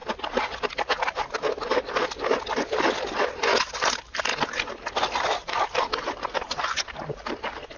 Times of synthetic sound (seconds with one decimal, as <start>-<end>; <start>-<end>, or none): 3.7-4.3; 5.2-7.8